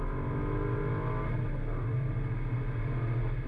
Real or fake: real